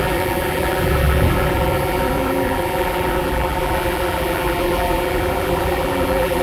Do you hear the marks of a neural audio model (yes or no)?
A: yes